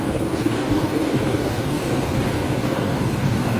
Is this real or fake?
fake